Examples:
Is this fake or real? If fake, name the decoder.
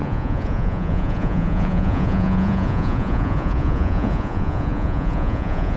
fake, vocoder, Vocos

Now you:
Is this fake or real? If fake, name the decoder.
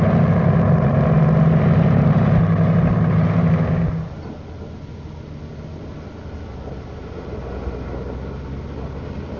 real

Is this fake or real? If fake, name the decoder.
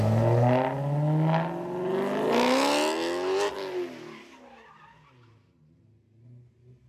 real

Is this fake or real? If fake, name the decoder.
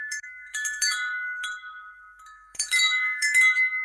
fake, autoencoder, DAC-VAE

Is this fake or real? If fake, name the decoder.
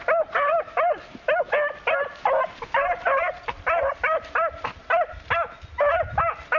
real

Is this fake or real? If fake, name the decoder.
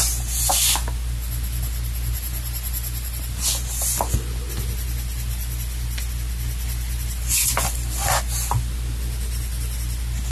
real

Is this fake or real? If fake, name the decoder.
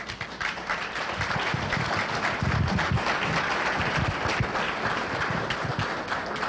real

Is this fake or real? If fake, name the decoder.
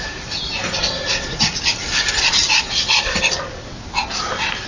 real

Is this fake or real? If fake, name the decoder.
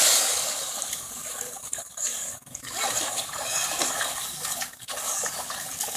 fake, codec, DAC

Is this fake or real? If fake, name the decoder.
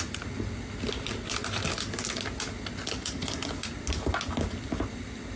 real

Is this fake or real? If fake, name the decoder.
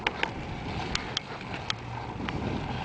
real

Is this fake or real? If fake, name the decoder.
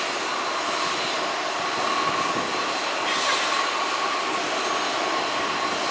real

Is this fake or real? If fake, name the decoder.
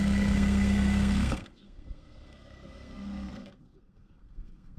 fake, codec, SNAC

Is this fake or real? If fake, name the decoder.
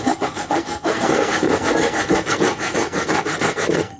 fake, codec, SNAC